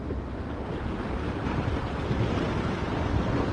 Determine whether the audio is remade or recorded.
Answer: recorded